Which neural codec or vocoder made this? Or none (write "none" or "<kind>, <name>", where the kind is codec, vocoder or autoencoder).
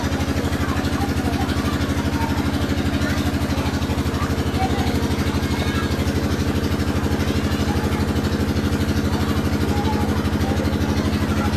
none